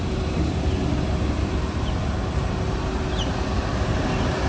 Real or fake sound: real